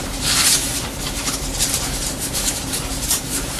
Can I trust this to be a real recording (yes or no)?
no